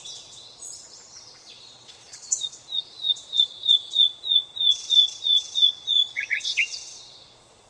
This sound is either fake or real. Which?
fake